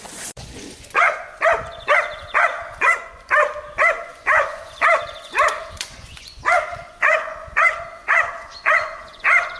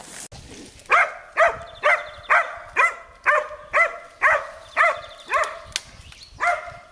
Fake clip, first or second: first